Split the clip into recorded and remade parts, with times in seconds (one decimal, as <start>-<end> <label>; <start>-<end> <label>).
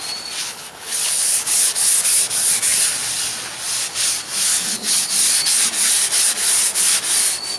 0.0-0.4 recorded; 0.4-1.9 remade; 1.9-4.5 recorded; 4.5-5.1 remade; 5.1-7.6 recorded